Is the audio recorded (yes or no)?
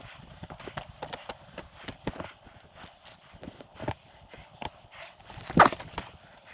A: no